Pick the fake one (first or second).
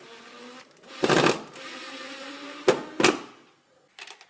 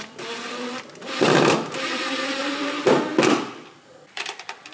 second